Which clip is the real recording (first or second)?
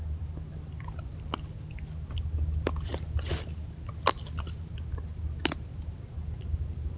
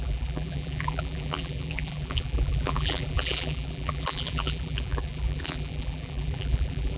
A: first